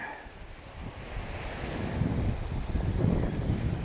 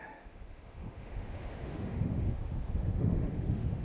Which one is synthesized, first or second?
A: second